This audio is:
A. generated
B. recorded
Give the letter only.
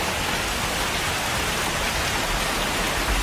B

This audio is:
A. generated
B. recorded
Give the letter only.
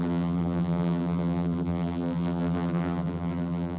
A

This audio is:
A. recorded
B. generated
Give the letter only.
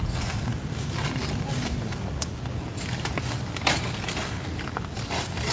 B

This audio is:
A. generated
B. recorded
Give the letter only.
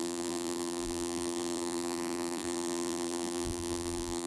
A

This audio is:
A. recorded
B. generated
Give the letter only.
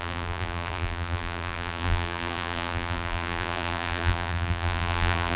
B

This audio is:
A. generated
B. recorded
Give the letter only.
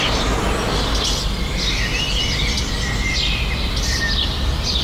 B